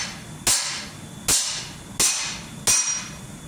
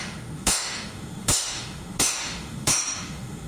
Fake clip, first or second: second